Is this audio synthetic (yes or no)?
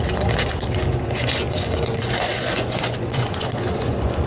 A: yes